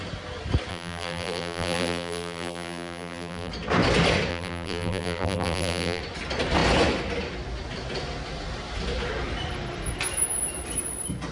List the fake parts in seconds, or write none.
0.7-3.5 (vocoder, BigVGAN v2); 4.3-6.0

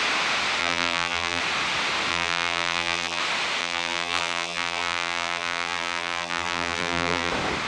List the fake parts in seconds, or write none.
0.6-1.4 (vocoder, BigVGAN v2); 2.1-3.2; 3.6-7.3

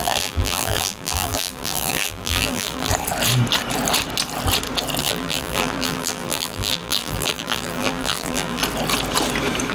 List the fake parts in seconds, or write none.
0.0-2.9 (vocoder, BigVGAN v2); 5.0-8.6

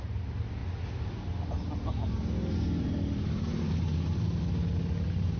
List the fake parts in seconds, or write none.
none

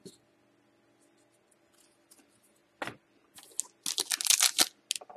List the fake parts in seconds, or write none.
none

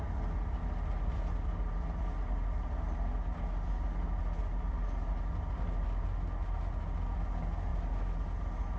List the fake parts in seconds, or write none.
none